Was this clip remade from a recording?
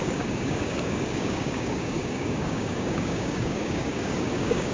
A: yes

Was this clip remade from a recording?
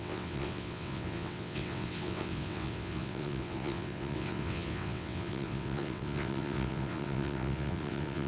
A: yes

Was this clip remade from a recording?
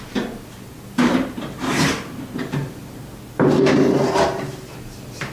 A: yes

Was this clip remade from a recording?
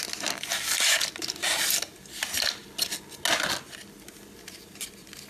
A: no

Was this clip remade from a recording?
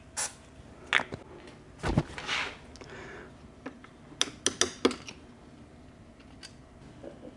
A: no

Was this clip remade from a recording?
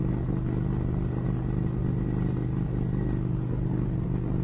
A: no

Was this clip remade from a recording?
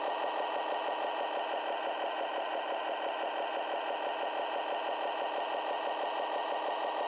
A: no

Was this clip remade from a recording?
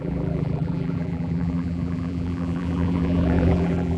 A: yes